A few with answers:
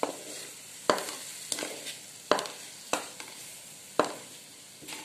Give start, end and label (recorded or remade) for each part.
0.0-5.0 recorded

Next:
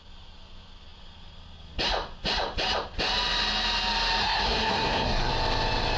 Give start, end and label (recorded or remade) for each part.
0.0-4.2 recorded; 4.2-5.3 remade; 5.3-6.0 recorded